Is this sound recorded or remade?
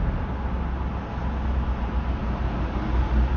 recorded